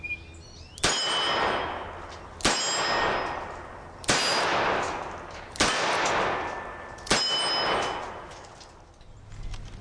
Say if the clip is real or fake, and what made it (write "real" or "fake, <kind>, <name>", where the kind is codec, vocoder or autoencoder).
real